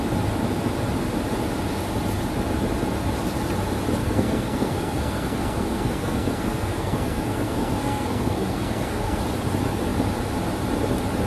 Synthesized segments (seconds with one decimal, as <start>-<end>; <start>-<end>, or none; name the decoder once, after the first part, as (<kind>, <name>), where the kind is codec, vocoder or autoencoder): 4.0-9.2 (codec, SNAC)